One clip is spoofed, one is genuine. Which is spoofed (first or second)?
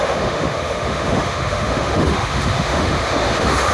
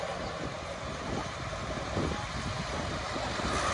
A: first